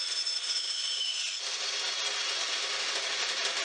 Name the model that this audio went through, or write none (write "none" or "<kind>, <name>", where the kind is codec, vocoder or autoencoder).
none